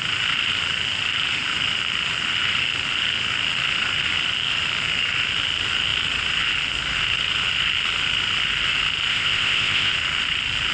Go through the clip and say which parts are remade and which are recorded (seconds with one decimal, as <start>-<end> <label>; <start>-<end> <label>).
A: 0.0-9.1 recorded; 9.1-9.9 remade; 9.9-10.7 recorded